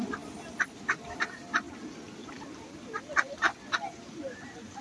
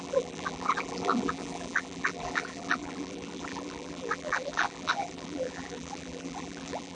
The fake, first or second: second